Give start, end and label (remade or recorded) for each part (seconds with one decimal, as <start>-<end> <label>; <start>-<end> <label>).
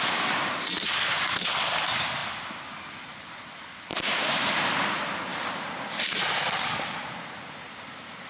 0.0-2.2 recorded; 2.2-3.3 remade; 3.3-3.9 recorded; 3.9-4.6 remade; 4.6-5.3 recorded; 5.3-6.3 remade; 6.3-8.3 recorded